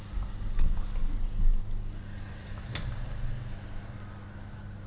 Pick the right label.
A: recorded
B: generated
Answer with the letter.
A